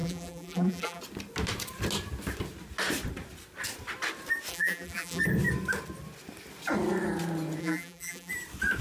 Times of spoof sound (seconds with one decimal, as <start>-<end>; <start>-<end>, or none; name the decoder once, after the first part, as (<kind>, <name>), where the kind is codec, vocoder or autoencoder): 0.0-1.0 (vocoder, BigVGAN v2); 4.5-5.2; 7.6-8.3